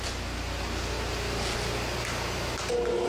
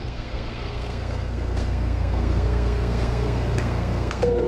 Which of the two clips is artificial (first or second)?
second